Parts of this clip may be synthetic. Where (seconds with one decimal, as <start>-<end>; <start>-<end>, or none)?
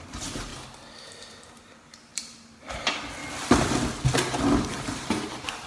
0.0-0.5; 1.3-3.2; 4.9-5.7